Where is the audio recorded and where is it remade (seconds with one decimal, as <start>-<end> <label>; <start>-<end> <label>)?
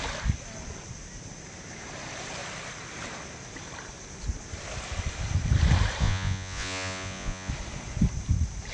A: 0.0-6.0 recorded; 6.0-7.5 remade; 7.5-8.7 recorded